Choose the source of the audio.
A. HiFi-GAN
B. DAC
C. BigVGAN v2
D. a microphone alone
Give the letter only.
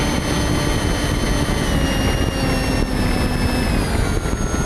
D